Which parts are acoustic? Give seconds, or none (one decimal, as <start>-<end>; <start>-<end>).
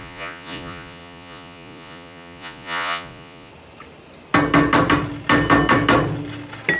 3.5-6.8